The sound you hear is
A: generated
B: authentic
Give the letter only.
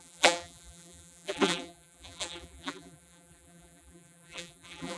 A